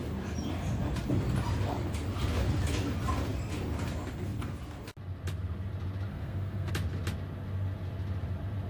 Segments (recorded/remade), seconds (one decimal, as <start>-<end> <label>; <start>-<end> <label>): 0.0-6.1 recorded; 6.1-6.7 remade; 6.7-8.7 recorded